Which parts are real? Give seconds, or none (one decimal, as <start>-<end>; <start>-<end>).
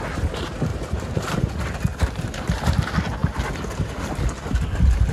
0.0-0.7; 1.5-1.9; 2.8-5.1